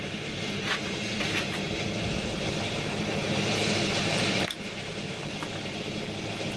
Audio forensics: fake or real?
fake